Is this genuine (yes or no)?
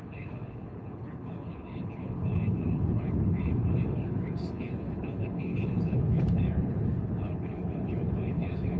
no